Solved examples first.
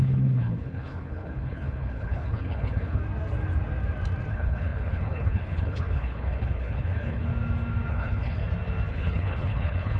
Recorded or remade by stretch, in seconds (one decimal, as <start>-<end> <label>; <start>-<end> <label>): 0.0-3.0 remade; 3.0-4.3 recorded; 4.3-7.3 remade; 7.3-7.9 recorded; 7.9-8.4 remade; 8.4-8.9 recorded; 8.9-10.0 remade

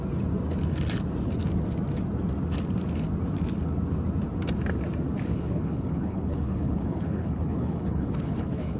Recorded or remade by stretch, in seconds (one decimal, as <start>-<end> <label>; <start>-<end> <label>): 0.0-5.3 recorded; 5.3-8.8 remade

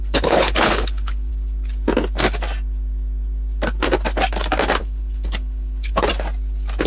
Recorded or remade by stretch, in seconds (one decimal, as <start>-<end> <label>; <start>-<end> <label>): 0.0-1.3 remade; 1.3-4.8 recorded; 4.8-6.1 remade; 6.1-6.9 recorded

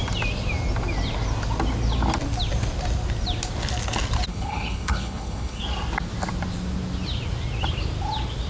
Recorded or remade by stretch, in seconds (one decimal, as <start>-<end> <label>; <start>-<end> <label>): 0.0-4.3 recorded; 4.3-5.6 remade; 5.6-8.5 recorded

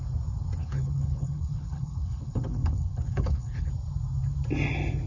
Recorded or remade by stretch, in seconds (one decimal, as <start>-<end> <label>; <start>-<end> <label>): 0.0-0.6 recorded; 0.6-3.7 remade; 3.7-5.1 recorded

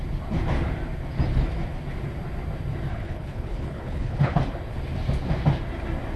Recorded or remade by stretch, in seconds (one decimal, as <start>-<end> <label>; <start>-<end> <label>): 0.0-2.9 recorded; 2.9-4.4 remade; 4.4-6.2 recorded

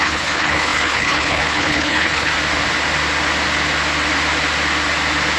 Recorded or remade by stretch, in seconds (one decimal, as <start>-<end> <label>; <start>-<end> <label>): 0.0-2.3 remade; 2.3-5.4 recorded